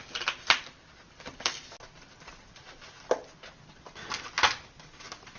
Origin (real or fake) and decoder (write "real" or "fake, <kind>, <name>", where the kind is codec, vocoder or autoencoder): real